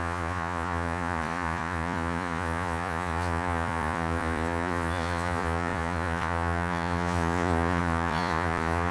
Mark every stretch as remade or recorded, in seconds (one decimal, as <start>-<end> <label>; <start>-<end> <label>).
0.0-8.9 remade